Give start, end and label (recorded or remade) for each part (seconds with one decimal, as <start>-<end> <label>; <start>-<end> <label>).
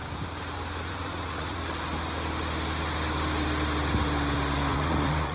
0.0-0.8 recorded; 0.8-1.6 remade; 1.6-4.7 recorded; 4.7-5.3 remade